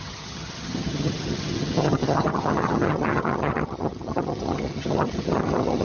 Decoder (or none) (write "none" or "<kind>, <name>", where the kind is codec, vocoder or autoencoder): vocoder, HiFi-GAN